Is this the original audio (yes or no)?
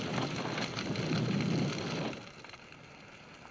yes